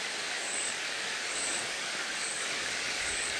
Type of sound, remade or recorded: remade